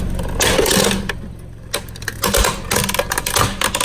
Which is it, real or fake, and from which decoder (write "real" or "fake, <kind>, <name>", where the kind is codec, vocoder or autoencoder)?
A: real